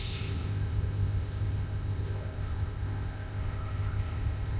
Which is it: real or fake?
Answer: fake